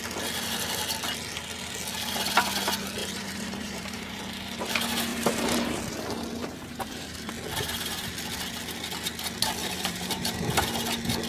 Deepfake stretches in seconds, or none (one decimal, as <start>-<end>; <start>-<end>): 3.0-4.2; 5.1-5.8; 6.4-7.3; 9.6-10.5